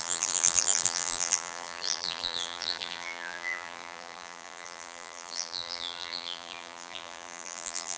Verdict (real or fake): fake